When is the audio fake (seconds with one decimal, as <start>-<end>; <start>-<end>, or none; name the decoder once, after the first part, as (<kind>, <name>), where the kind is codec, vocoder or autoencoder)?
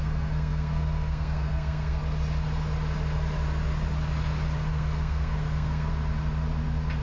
0.0-2.0 (codec, SNAC); 4.7-5.9